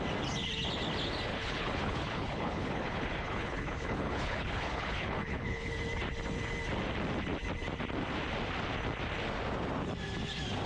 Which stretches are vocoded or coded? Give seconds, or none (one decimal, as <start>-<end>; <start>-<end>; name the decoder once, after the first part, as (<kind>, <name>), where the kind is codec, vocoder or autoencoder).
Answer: 1.3-5.7 (codec, HILCodec)